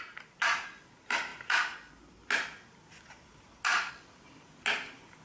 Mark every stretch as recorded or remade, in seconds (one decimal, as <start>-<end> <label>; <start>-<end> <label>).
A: 0.0-5.2 recorded